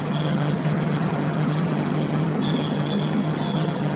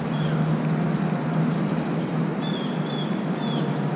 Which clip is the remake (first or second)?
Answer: first